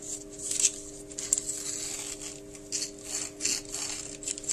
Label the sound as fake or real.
real